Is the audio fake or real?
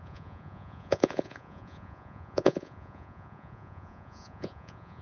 fake